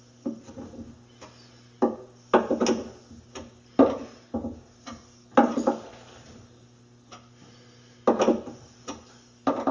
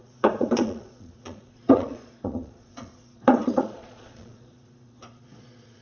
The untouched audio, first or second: first